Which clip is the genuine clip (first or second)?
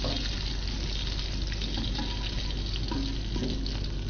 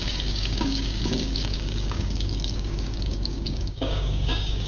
first